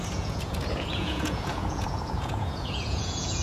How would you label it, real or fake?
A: fake